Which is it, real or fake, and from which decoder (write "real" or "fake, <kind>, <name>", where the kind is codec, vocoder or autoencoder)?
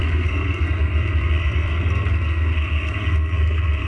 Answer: fake, codec, SNAC